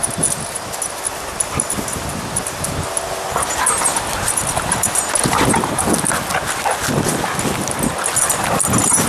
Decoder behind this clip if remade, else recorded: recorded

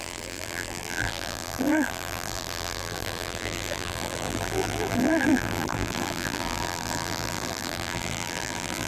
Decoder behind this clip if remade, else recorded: remade, vocoder, BigVGAN v2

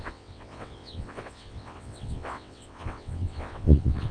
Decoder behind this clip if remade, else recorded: remade, vocoder, WaveNeXt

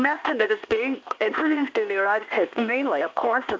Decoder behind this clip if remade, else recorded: remade, codec, ZipCodec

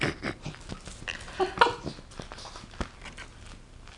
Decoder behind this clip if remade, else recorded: recorded